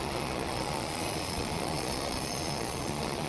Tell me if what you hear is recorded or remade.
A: remade